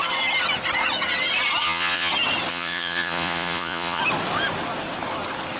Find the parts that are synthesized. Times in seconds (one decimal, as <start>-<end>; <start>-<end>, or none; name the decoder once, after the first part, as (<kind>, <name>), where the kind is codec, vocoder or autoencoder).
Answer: 1.6-2.1 (vocoder, Vocos); 2.5-4.0